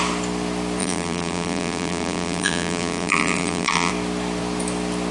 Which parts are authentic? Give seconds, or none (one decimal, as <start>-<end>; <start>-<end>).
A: 0.0-0.8; 3.9-5.1